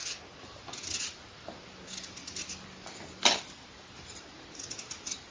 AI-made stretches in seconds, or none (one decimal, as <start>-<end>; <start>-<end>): none